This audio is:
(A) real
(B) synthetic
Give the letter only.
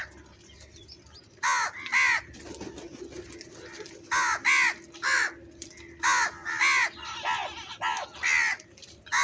A